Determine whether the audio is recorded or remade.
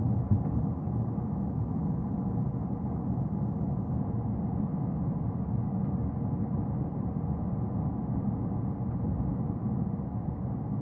recorded